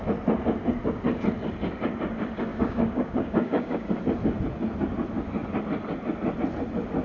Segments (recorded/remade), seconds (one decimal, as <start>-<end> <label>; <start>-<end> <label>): 0.0-2.5 recorded; 2.5-3.9 remade; 3.9-7.0 recorded